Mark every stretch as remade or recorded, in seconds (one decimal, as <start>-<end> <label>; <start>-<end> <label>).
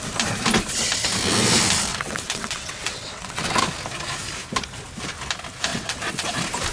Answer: 0.0-1.9 recorded; 1.9-3.6 remade; 3.6-5.7 recorded; 5.7-6.3 remade; 6.3-6.7 recorded